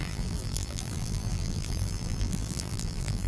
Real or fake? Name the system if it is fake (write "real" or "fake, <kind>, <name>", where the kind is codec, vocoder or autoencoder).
fake, vocoder, BigVGAN v2